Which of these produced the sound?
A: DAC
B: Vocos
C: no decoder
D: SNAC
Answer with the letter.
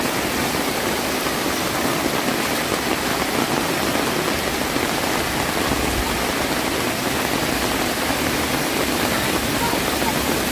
C